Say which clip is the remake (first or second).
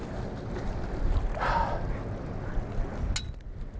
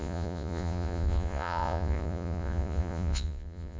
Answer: second